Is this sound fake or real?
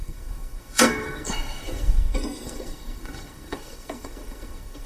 fake